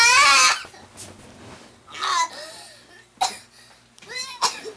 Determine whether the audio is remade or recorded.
recorded